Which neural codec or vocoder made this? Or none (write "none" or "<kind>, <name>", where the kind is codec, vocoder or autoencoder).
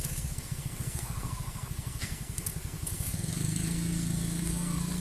codec, SNAC